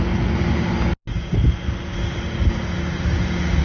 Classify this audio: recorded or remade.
recorded